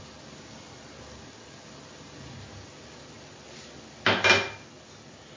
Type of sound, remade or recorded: recorded